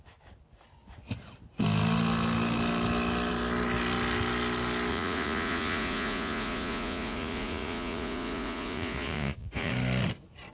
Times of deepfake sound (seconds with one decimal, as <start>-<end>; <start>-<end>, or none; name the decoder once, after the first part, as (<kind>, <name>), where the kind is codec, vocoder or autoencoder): 4.9-9.7 (vocoder, Vocos)

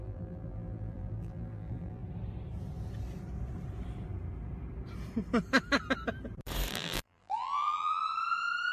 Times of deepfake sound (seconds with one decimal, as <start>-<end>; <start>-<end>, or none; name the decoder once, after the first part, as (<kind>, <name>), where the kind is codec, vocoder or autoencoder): 0.0-2.0 (vocoder, BigVGAN v2); 6.7-8.0

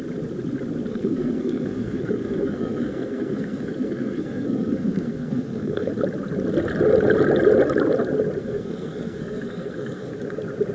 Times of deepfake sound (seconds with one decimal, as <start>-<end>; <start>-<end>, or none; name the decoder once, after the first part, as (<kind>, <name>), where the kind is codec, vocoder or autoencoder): 0.9-5.9 (codec, SNAC); 8.4-10.1

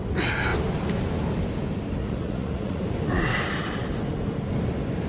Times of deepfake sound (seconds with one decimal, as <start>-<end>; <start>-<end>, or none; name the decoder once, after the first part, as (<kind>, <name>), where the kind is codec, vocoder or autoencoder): 2.0-2.8 (vocoder, Vocos)